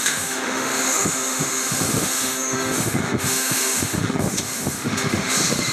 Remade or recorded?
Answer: remade